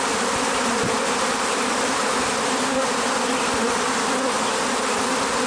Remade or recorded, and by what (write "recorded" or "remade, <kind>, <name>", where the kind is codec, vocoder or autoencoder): remade, vocoder, BigVGAN v2